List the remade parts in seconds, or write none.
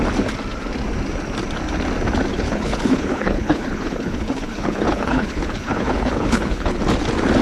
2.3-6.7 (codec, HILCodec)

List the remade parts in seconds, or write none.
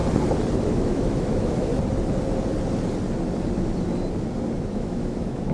0.6-1.7 (autoencoder, DAC-VAE); 4.6-5.5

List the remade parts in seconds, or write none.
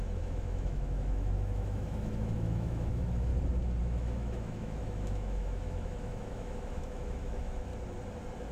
0.0-3.3 (autoencoder, DAC-VAE); 3.8-7.7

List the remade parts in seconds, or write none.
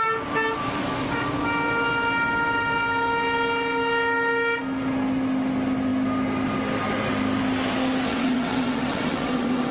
8.1-9.7 (vocoder, WaveNeXt)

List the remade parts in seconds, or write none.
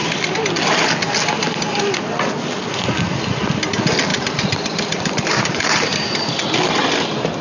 4.1-6.2 (vocoder, BigVGAN v2)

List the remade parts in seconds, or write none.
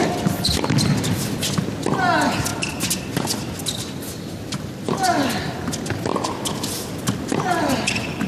none